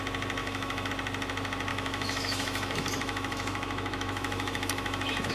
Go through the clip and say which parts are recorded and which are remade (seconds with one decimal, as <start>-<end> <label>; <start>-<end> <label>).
0.0-0.4 recorded; 0.4-0.9 remade; 0.9-1.7 recorded; 1.7-5.3 remade